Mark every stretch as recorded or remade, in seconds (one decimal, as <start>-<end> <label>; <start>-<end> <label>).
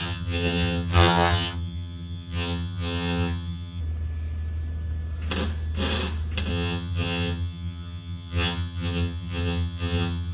0.0-3.8 remade; 3.8-6.5 recorded; 6.5-10.3 remade